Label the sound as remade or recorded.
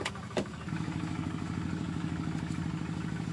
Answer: remade